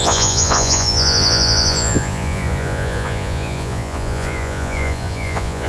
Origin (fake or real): fake